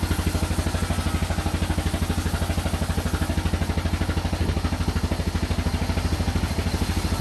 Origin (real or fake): real